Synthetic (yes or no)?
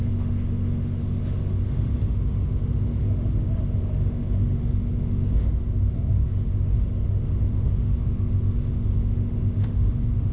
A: yes